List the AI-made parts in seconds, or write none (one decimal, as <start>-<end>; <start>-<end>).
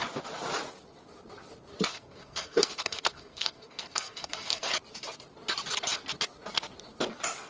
1.9-4.7